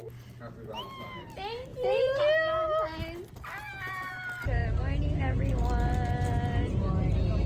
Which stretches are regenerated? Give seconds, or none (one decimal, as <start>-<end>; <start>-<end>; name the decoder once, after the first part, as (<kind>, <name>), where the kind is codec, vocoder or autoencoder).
1.7-2.2 (vocoder, BigVGAN v2)